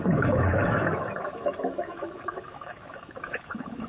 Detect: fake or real fake